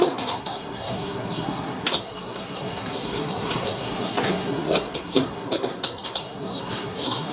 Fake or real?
fake